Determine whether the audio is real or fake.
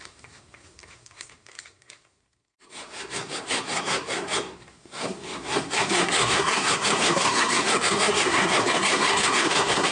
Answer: fake